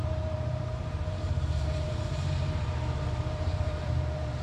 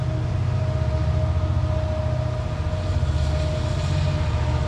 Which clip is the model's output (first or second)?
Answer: first